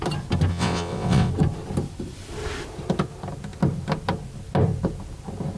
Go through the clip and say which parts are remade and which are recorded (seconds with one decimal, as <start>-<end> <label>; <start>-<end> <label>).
0.0-0.5 recorded; 0.5-1.3 remade; 1.3-5.6 recorded